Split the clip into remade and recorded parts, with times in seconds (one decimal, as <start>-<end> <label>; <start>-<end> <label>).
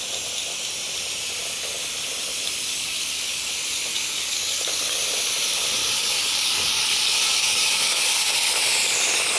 0.0-2.7 recorded; 2.7-3.5 remade; 3.5-3.9 recorded; 3.9-5.0 remade; 5.0-5.8 recorded; 5.8-8.6 remade; 8.6-9.4 recorded